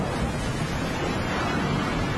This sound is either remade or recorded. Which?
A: recorded